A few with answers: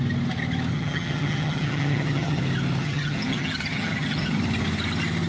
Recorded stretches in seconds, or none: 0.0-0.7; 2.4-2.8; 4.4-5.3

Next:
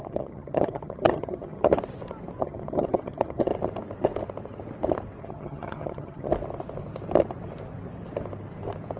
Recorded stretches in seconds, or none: 1.7-2.4; 3.5-5.2; 6.3-9.0